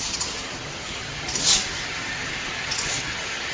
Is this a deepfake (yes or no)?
yes